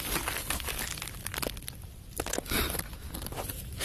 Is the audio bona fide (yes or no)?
yes